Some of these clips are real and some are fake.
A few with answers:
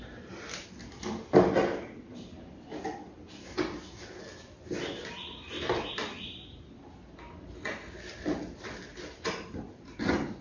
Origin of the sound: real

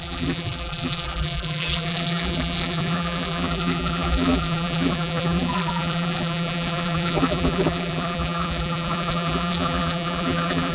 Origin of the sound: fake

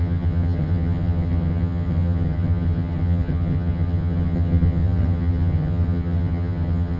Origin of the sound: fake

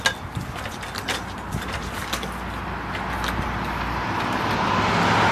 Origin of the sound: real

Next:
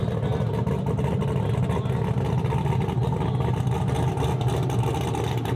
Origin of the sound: real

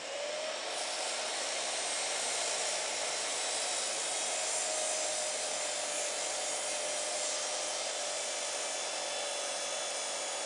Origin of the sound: real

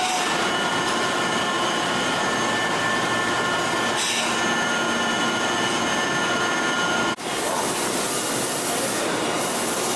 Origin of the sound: real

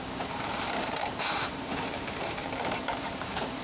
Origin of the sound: fake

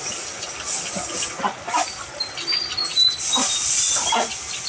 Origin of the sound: real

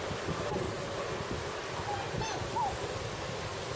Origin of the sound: real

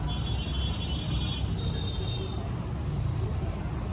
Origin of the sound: real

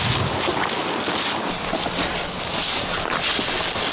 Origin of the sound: real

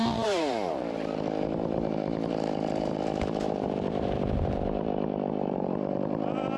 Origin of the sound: fake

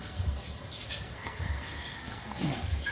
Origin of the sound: fake